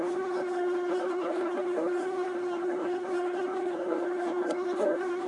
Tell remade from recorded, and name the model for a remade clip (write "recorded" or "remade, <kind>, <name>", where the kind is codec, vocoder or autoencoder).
remade, codec, SNAC